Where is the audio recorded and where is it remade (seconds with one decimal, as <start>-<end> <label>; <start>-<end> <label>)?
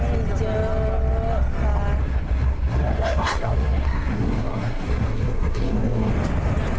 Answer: 0.0-2.0 recorded; 2.0-6.1 remade; 6.1-6.8 recorded